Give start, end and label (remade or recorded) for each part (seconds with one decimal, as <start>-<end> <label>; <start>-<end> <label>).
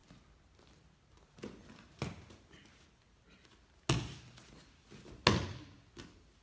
0.0-6.4 recorded